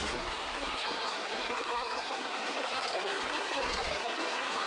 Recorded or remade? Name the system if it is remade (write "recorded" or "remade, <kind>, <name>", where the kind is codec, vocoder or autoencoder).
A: remade, codec, SNAC